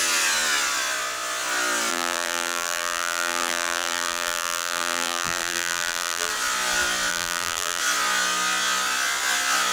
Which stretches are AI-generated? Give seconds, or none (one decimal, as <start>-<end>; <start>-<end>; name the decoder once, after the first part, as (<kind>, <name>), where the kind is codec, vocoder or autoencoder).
1.9-6.3 (vocoder, BigVGAN v2); 7.1-7.8